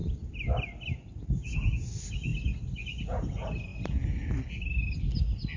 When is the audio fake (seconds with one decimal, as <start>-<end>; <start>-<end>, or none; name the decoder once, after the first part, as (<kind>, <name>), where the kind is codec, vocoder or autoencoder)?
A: none